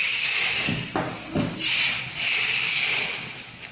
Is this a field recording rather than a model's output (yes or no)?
yes